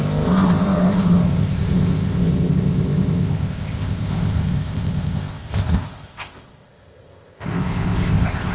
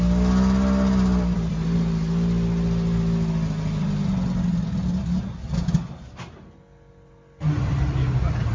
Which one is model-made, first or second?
first